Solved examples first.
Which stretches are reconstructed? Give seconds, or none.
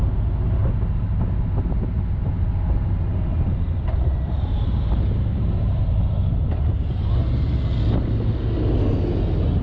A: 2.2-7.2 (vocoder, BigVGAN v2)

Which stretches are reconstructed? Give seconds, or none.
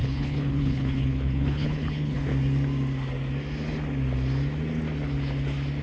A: 0.0-2.3 (codec, HILCodec)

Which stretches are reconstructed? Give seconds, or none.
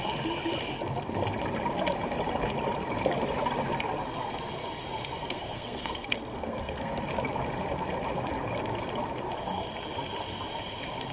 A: 5.2-7.0 (codec, SNAC)